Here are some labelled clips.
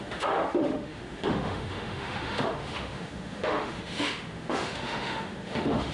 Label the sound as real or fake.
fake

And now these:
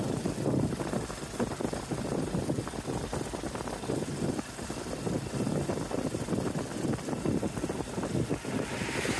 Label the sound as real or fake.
real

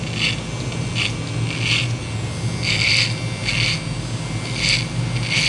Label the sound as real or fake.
real